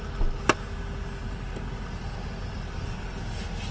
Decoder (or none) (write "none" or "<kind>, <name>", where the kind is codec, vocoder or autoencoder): none